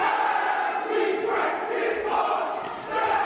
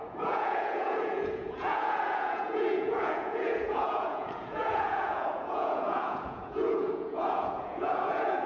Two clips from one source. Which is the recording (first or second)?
first